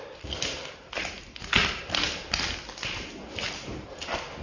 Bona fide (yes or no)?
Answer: yes